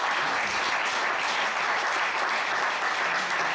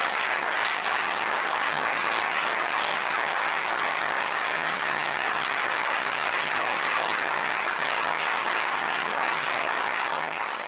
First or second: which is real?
first